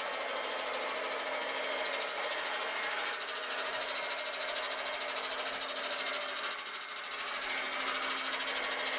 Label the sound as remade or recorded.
recorded